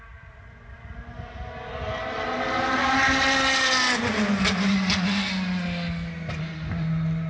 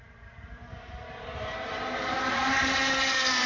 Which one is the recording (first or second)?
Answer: first